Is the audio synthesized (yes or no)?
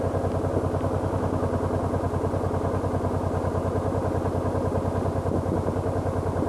no